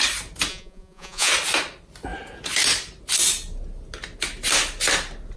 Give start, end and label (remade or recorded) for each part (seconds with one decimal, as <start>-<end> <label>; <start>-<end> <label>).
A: 0.0-0.5 recorded; 0.5-1.3 remade; 1.3-5.4 recorded